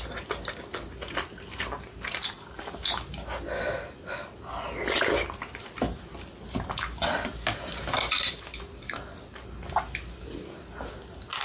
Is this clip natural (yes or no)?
yes